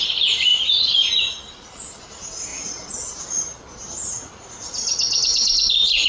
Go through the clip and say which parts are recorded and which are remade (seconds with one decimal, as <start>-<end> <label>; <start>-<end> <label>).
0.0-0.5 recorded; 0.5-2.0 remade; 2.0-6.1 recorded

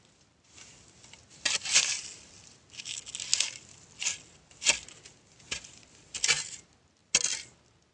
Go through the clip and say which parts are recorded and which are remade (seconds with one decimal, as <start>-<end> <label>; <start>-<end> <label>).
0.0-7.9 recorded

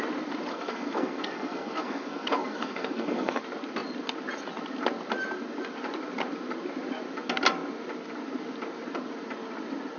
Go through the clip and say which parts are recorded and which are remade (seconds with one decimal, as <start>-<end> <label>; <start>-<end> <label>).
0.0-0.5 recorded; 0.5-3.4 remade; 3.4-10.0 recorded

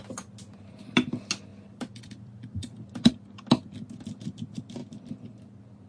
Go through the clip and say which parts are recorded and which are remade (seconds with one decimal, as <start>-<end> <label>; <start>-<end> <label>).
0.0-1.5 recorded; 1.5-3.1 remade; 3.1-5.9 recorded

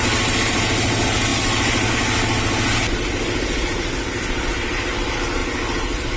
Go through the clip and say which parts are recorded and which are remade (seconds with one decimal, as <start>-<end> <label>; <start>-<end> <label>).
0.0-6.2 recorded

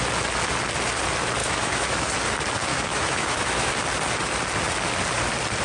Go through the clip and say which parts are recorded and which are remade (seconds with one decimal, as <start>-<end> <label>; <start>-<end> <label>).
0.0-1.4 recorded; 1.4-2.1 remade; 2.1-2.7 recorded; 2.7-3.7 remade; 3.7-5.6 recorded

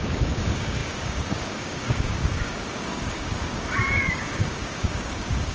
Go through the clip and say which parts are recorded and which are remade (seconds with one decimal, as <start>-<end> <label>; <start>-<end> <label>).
0.0-5.5 remade

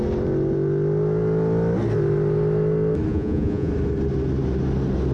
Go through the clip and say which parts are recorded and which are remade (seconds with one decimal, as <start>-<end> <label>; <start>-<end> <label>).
0.0-3.1 recorded; 3.1-3.7 remade; 3.7-5.1 recorded